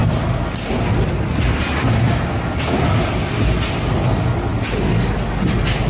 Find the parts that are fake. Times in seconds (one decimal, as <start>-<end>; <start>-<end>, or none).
none